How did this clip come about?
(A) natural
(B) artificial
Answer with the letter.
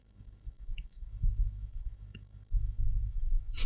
B